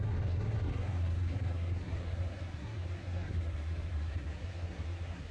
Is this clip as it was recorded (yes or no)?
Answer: no